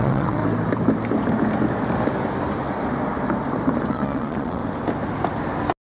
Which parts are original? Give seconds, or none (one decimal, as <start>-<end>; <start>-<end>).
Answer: 0.4-3.9; 4.6-5.9